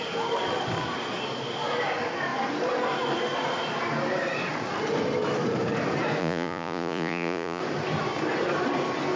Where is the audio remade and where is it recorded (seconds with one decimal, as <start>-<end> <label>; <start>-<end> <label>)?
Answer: 0.0-6.2 recorded; 6.2-7.6 remade; 7.6-9.2 recorded